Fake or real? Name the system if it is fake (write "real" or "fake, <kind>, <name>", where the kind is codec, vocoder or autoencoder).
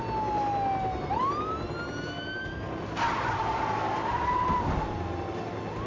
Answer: real